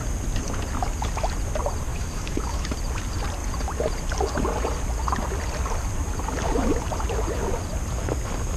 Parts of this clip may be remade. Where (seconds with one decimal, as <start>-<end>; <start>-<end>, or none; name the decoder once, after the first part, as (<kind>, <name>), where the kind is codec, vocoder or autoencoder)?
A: 1.9-2.7 (autoencoder, DAC-VAE)